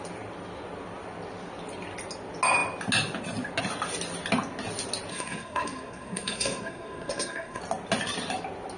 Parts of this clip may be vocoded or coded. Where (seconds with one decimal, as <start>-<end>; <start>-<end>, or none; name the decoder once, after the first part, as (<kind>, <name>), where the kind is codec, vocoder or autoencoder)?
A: 5.1-7.6 (codec, SNAC)